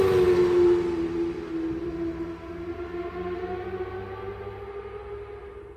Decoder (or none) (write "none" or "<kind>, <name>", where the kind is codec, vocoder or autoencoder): none